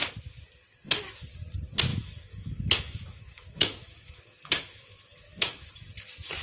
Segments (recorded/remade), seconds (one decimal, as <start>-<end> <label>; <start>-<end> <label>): 0.0-1.9 recorded; 1.9-5.7 remade; 5.7-6.4 recorded